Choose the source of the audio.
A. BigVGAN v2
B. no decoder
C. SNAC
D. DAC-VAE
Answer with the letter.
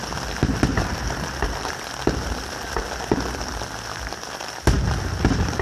B